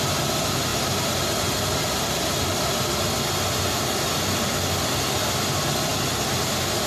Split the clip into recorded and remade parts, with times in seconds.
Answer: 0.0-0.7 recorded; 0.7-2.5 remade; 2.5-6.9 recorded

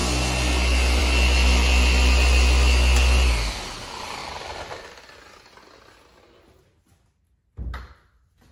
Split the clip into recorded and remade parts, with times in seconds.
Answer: 0.0-8.5 recorded

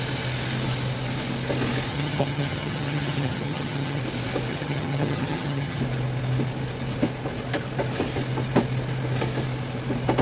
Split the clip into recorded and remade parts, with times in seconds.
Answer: 0.0-1.9 recorded; 1.9-4.0 remade; 4.0-4.5 recorded; 4.5-5.8 remade; 5.8-10.2 recorded

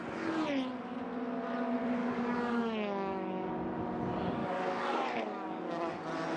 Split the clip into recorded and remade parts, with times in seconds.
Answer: 0.0-2.0 recorded; 2.0-3.5 remade; 3.5-4.4 recorded; 4.4-5.9 remade; 5.9-6.4 recorded

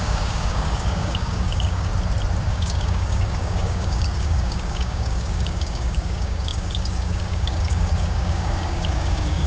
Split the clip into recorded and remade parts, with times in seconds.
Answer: 0.0-1.9 remade; 1.9-2.5 recorded; 2.5-9.5 remade

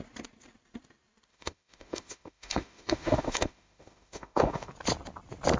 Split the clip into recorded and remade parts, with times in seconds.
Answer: 0.0-1.3 recorded; 1.3-4.7 remade; 4.7-5.6 recorded